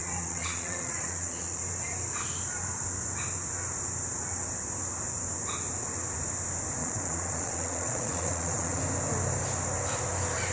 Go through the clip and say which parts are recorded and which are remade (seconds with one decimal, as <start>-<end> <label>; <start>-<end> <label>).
0.0-1.6 remade; 1.6-6.8 recorded; 6.8-8.8 remade; 8.8-10.5 recorded

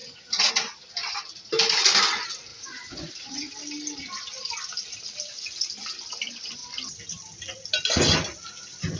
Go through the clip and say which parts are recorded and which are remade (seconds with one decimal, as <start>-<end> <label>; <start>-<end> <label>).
0.0-0.5 remade; 0.5-2.5 recorded; 2.5-3.5 remade; 3.5-9.0 recorded

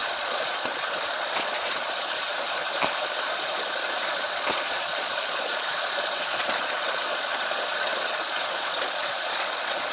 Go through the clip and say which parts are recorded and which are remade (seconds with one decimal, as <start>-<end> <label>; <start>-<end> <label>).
0.0-2.6 remade; 2.6-3.3 recorded; 3.3-9.9 remade

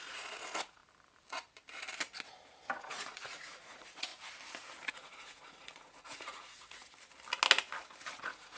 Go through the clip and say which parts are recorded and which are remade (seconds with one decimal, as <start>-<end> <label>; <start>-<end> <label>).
0.0-0.8 remade; 0.8-2.8 recorded; 2.8-4.1 remade; 4.1-4.9 recorded; 4.9-6.8 remade; 6.8-8.2 recorded; 8.2-8.6 remade

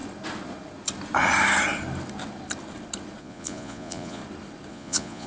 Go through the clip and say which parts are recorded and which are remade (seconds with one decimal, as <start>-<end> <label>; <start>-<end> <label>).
0.0-3.2 recorded; 3.2-4.2 remade; 4.2-4.7 recorded; 4.7-5.3 remade

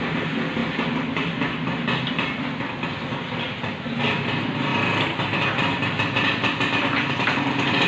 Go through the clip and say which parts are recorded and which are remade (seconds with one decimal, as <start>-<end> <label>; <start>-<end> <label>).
0.0-7.9 recorded

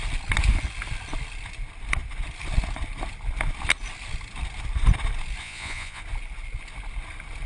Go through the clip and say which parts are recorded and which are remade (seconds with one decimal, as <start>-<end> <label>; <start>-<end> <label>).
0.0-5.4 recorded; 5.4-6.0 remade; 6.0-7.5 recorded